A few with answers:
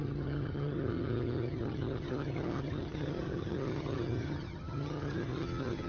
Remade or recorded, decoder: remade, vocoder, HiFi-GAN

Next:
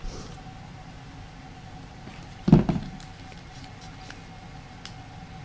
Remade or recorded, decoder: recorded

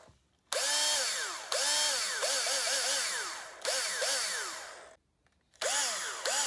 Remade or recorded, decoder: recorded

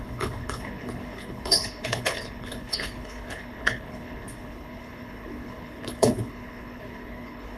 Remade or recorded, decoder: remade, codec, HILCodec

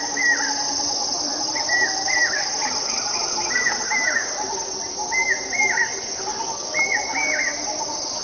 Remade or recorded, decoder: recorded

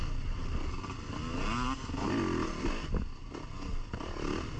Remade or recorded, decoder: recorded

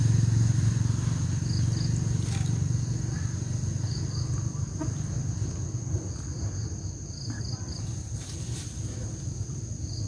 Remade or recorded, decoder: recorded